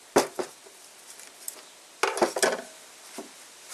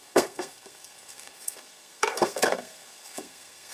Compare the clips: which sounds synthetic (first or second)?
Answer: second